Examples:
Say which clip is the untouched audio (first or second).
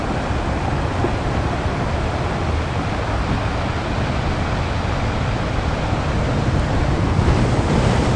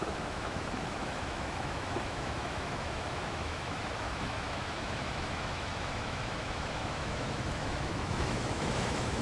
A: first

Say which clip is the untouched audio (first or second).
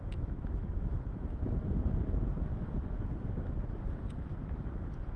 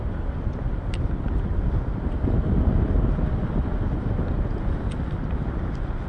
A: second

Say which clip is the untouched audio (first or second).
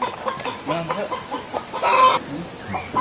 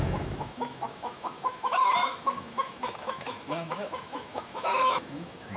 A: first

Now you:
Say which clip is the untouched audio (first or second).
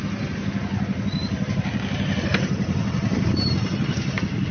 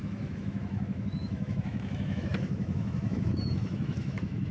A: first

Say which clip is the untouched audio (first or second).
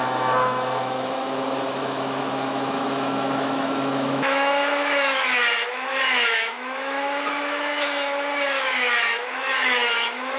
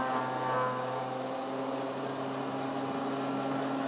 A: second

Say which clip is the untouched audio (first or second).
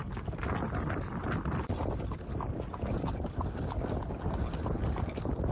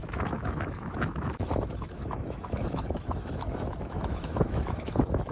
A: first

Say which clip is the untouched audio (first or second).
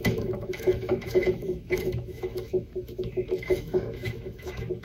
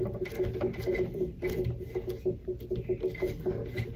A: second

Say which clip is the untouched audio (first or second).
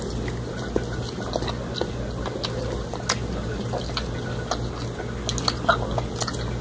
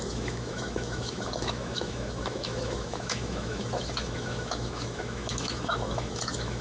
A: first